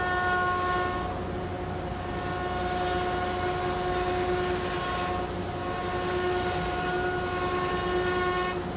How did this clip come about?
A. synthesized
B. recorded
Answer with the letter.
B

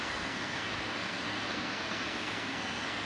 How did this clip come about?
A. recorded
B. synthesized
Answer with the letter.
B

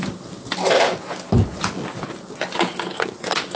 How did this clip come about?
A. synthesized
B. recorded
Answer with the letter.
B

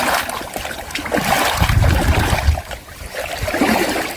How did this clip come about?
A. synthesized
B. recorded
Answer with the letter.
B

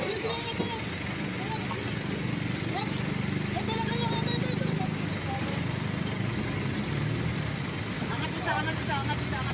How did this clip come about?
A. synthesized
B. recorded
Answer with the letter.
B